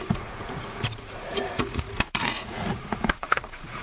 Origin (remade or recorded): remade